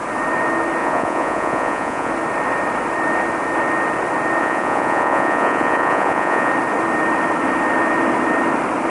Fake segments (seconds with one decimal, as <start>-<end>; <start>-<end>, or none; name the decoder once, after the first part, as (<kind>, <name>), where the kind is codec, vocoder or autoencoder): 0.8-2.1 (vocoder, Vocos); 4.4-6.5